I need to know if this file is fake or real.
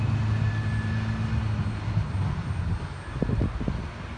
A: real